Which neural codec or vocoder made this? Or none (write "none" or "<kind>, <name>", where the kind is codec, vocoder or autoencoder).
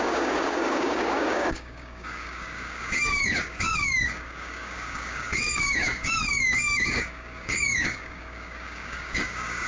codec, DAC